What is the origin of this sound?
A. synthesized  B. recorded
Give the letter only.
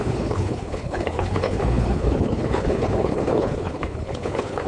A